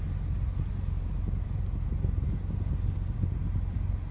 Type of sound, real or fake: real